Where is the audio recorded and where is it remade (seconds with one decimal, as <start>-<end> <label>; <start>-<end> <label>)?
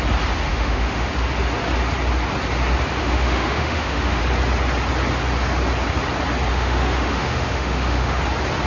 0.0-0.5 recorded; 0.5-1.1 remade; 1.1-3.0 recorded; 3.0-4.2 remade; 4.2-6.5 recorded; 6.5-8.2 remade; 8.2-8.7 recorded